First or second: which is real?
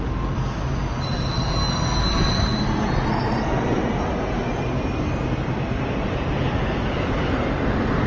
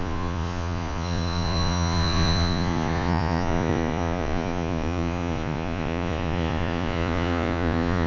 first